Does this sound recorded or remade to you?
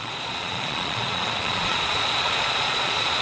remade